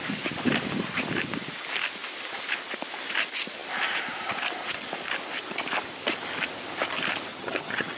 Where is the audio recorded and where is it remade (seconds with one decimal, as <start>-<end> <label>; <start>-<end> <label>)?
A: 0.0-7.3 recorded; 7.3-8.0 remade